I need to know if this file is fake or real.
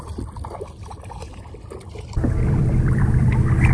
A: real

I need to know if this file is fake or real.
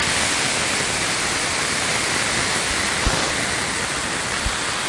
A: real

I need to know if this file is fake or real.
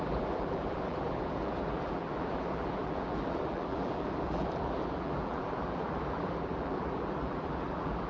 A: fake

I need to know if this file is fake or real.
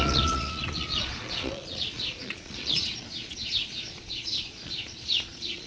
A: fake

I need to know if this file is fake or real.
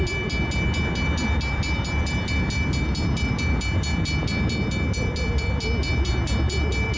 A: real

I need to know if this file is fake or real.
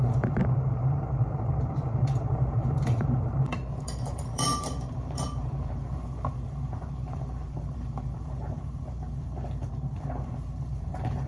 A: fake